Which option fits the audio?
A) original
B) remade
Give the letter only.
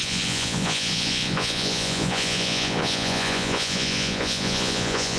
B